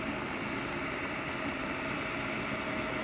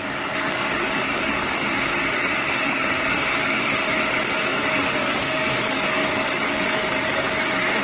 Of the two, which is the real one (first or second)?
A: first